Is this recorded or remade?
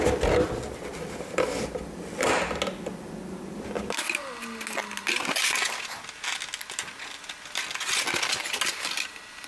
recorded